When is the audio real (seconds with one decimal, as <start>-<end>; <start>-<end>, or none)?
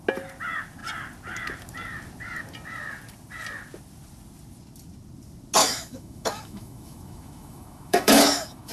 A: 0.0-5.6